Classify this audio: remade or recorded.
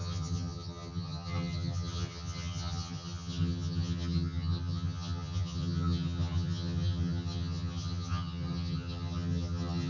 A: remade